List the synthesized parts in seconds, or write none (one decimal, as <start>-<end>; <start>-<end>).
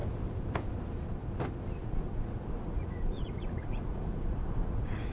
1.8-5.1